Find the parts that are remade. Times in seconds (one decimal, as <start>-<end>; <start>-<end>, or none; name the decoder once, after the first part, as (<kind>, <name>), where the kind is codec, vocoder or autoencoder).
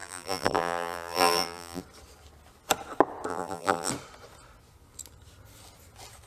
0.0-1.8 (vocoder, BigVGAN v2); 3.3-3.9